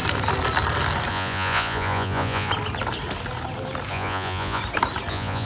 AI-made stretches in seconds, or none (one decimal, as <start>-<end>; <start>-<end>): 1.1-2.5; 3.9-4.6; 5.1-5.5